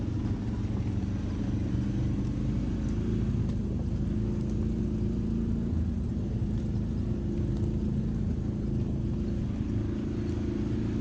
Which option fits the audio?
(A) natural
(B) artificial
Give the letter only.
A